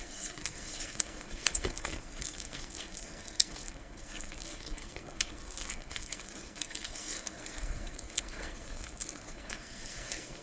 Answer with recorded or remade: remade